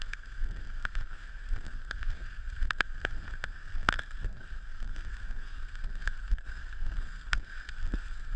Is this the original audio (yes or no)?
no